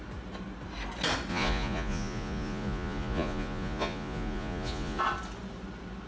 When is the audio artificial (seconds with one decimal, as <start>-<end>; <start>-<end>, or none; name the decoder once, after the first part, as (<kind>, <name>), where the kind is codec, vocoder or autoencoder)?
1.3-5.0 (vocoder, Vocos)